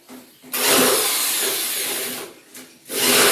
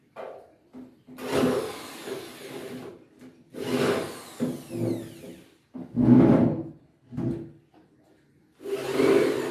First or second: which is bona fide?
second